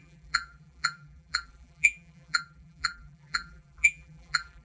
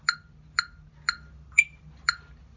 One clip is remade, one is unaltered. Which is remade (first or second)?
first